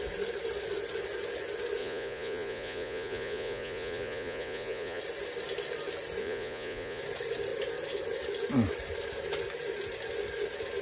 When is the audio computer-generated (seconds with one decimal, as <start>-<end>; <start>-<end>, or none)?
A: 1.8-5.0; 6.2-7.0

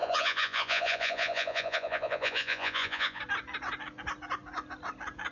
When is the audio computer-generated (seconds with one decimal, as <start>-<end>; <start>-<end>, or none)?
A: 0.0-3.2

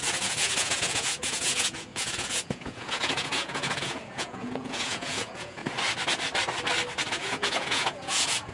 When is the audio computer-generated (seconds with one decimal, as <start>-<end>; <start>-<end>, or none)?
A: 0.0-5.6; 7.1-8.5

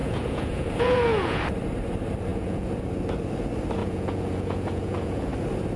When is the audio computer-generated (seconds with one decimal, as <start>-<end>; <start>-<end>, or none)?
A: 0.0-1.4; 2.3-2.8; 3.8-5.3

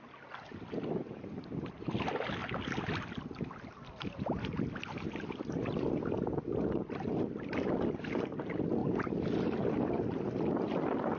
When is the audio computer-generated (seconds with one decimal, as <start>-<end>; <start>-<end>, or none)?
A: none

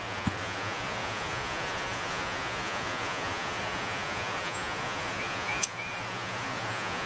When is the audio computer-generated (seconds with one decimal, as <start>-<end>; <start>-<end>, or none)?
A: 0.0-7.1